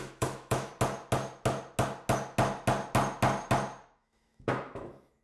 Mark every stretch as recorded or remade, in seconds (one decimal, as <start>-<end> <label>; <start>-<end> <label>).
0.0-0.7 remade; 0.7-3.8 recorded; 3.8-5.2 remade